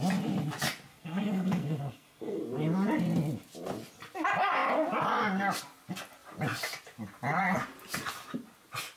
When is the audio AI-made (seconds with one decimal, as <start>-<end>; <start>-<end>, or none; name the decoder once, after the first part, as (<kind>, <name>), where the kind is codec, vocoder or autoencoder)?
0.9-2.4 (codec, SNAC)

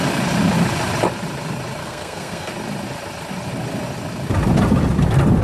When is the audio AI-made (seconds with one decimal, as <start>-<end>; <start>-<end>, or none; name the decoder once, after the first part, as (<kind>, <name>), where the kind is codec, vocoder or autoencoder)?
1.8-2.5 (codec, SNAC)

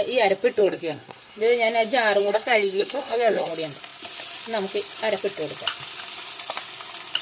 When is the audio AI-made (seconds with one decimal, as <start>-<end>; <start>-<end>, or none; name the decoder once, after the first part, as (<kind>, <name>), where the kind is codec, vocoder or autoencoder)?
0.6-1.4 (codec, SNAC); 2.2-3.5

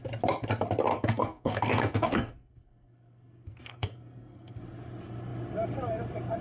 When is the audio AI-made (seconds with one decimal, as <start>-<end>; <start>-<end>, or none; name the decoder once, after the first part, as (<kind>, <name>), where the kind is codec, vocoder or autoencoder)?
0.9-4.6 (codec, SNAC)

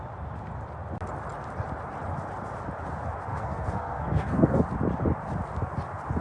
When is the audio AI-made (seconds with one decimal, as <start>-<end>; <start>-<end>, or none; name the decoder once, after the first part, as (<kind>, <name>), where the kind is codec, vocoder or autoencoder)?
3.3-4.6 (codec, SNAC)

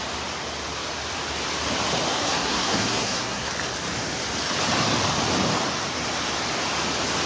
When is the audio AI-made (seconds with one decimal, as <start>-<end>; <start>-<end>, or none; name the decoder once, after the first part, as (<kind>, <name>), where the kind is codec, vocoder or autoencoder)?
2.1-3.5 (codec, SNAC)

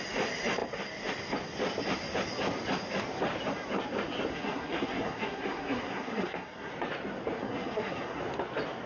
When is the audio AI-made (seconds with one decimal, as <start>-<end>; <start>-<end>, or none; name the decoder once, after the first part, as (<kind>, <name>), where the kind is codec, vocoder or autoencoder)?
4.3-6.7 (codec, SNAC); 7.4-8.2

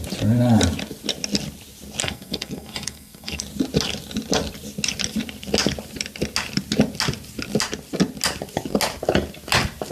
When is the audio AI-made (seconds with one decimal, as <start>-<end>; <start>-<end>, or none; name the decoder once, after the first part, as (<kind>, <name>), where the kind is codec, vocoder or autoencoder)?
2.0-3.4 (codec, SNAC)